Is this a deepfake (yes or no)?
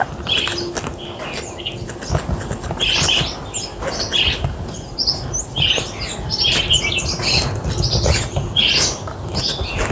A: no